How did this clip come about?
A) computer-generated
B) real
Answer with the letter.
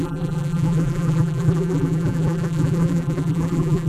A